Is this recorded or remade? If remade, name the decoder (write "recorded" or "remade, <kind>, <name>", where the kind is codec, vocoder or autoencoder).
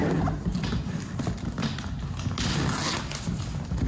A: recorded